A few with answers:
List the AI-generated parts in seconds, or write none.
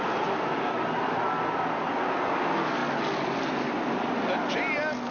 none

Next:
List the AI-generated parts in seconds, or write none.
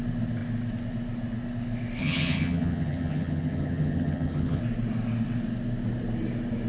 2.0-4.6 (vocoder, HiFi-GAN)